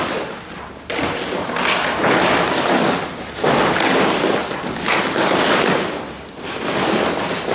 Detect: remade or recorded recorded